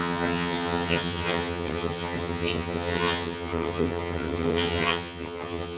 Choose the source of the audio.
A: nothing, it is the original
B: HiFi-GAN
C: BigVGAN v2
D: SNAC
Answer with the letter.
B